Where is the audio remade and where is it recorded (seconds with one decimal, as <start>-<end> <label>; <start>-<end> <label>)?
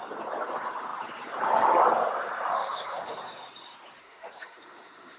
0.0-2.5 recorded; 2.5-3.1 remade; 3.1-4.0 recorded; 4.0-5.2 remade